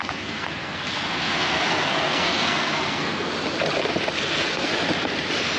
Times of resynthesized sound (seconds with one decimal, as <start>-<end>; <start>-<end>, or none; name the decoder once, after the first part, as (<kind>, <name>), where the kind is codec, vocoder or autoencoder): 0.0-3.3 (codec, SNAC); 4.2-4.7